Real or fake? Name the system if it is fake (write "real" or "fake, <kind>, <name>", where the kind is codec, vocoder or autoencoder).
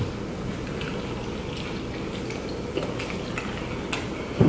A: real